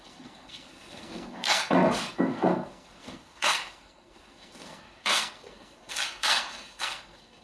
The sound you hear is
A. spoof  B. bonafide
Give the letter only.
A